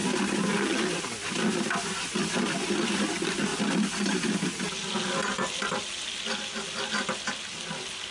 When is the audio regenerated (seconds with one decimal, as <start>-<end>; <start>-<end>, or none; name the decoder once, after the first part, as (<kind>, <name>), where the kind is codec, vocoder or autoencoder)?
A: none